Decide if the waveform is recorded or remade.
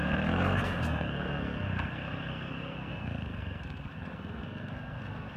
remade